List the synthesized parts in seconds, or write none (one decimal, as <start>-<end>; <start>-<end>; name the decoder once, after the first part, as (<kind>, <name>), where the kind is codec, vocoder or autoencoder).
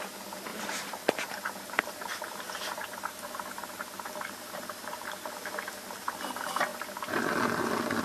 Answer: 0.5-5.3 (vocoder, BigVGAN v2)